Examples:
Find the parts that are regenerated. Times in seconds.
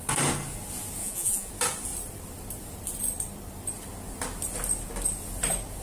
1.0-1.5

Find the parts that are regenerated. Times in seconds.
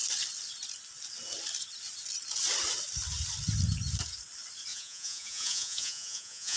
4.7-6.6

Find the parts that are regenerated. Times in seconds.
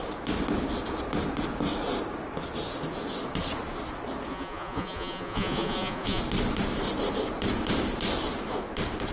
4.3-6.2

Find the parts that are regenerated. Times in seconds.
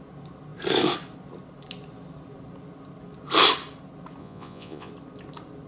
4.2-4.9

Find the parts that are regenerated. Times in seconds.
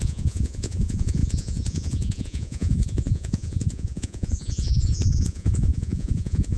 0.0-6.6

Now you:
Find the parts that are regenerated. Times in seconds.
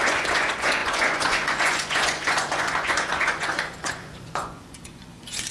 0.0-5.5